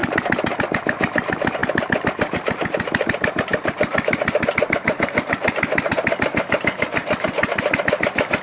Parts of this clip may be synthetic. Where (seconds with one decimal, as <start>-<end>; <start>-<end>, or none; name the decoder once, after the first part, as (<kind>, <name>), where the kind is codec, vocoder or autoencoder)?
none